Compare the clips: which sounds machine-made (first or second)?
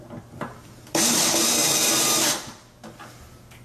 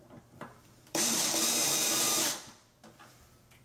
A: second